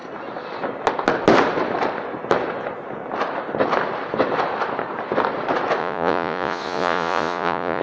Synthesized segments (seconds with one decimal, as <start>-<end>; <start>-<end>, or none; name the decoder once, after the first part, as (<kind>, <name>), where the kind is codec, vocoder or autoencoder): 5.8-7.8 (vocoder, Vocos)